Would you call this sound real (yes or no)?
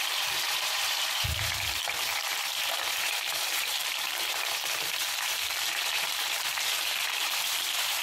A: no